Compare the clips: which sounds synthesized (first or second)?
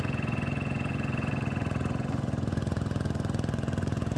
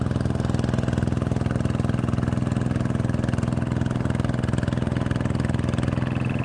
first